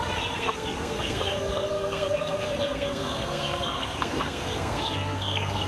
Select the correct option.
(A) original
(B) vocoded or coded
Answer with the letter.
B